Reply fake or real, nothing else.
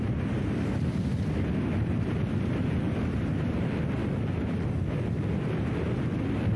real